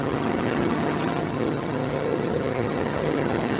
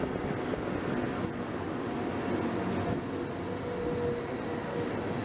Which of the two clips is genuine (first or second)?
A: second